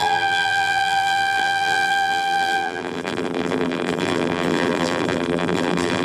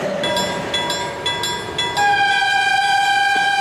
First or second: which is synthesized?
first